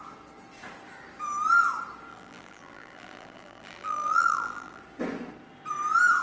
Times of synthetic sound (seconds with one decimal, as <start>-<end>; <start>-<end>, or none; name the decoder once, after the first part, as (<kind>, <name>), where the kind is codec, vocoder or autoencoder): 2.1-4.8 (vocoder, BigVGAN v2)